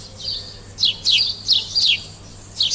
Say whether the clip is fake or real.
real